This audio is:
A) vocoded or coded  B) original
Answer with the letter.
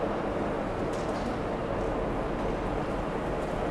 B